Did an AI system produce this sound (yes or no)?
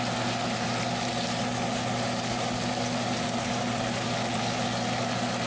no